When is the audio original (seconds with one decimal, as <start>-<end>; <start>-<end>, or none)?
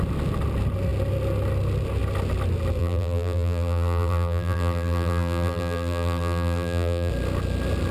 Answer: 0.0-2.8; 7.1-7.9